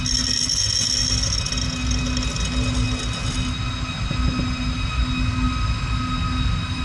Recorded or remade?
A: recorded